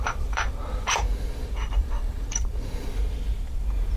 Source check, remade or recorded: remade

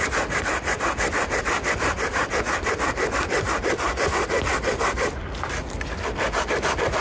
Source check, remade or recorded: recorded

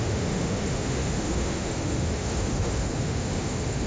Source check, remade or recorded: remade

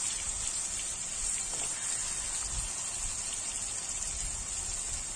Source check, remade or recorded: recorded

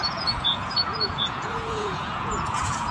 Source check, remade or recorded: remade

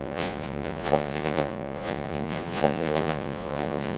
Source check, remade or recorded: remade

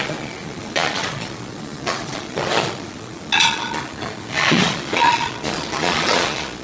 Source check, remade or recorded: remade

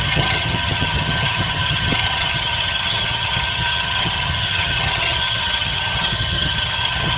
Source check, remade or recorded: remade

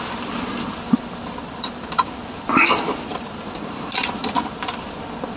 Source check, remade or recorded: remade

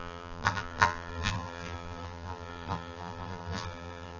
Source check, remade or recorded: remade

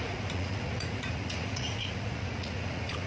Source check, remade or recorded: remade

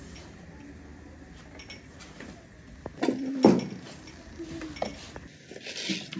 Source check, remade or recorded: recorded